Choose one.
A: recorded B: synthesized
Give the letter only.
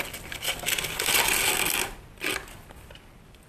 A